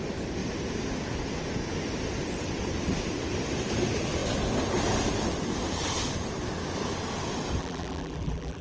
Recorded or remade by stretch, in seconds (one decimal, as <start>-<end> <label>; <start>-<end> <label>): 0.0-7.6 recorded; 7.6-8.6 remade